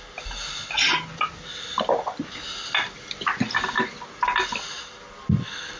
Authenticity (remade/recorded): recorded